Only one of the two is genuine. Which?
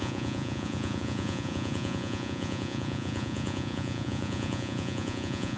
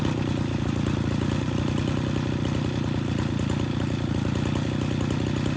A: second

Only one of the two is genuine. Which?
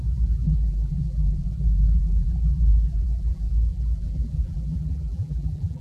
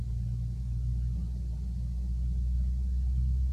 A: second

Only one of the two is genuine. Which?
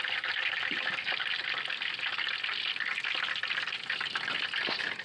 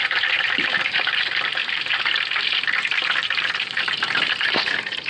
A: first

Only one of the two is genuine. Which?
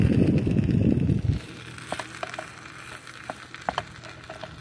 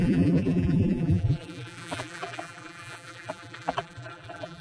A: first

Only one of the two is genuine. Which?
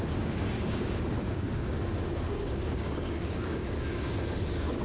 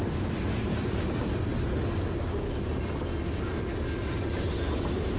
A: second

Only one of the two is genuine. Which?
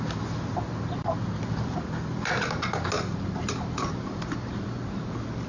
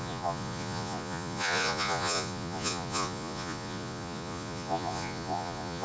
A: first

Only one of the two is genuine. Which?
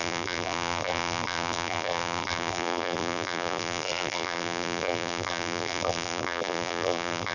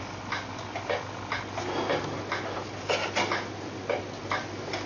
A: second